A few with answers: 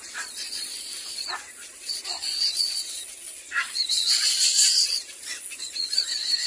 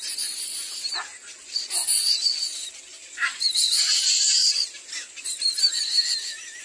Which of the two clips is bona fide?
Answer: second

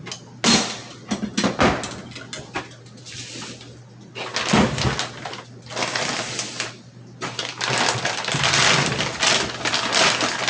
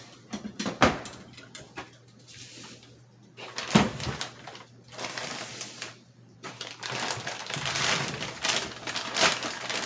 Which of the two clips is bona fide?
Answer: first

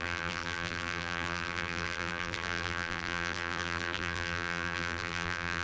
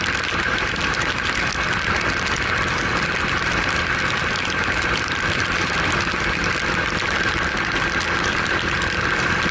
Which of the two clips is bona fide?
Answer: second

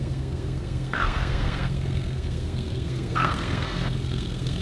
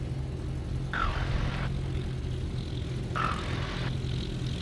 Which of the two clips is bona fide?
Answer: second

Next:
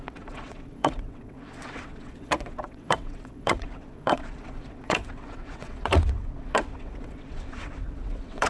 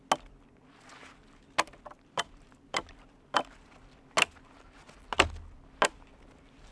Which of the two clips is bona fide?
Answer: second